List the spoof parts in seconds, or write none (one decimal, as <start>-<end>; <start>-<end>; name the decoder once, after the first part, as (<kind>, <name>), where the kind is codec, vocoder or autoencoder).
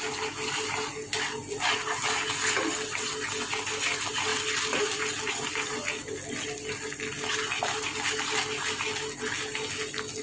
none